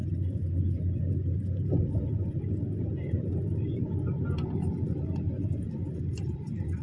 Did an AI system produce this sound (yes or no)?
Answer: no